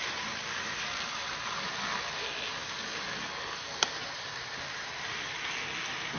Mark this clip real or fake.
real